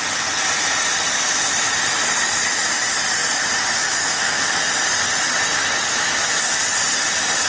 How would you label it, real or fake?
real